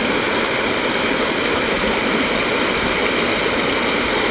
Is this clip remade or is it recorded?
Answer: recorded